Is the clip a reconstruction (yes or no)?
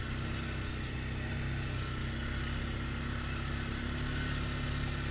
no